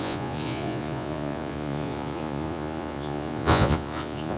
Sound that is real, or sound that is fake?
fake